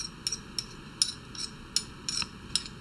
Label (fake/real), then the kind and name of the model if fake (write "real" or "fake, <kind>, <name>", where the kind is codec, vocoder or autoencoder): real